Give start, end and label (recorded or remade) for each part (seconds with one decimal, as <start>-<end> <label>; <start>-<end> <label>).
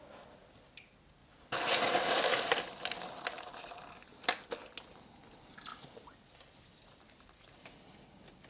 0.0-8.5 recorded